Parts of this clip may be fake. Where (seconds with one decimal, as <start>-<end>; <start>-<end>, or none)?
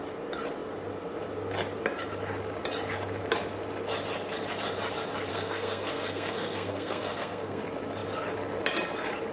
5.3-7.6